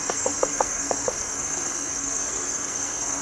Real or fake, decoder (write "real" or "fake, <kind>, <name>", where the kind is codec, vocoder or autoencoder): fake, codec, SNAC